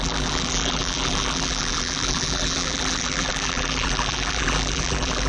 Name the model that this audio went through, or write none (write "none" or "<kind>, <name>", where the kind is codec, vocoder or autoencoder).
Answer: vocoder, BigVGAN v2